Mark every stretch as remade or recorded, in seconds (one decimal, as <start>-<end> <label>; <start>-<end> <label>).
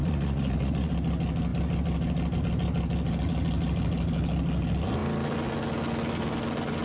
0.0-0.9 remade; 0.9-6.8 recorded